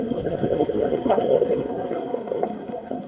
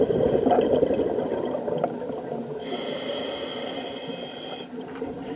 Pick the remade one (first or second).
first